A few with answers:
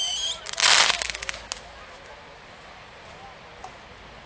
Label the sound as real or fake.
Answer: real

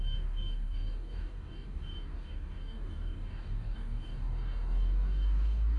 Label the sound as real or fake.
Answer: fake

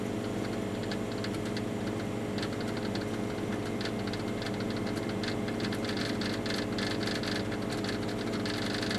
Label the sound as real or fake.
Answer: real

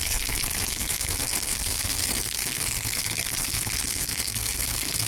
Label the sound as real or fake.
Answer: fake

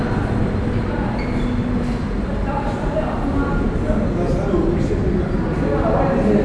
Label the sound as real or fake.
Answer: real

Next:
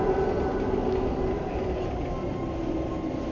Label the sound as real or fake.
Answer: real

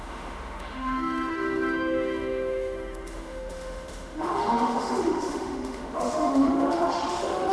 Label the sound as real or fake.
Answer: fake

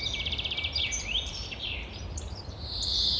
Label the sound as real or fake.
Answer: fake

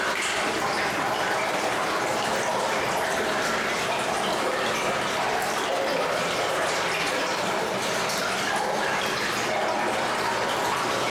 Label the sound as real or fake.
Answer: real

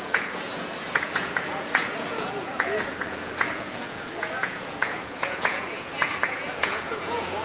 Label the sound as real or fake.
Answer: fake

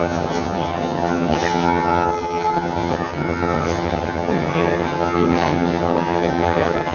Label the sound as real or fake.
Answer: fake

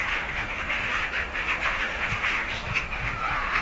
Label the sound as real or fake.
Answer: fake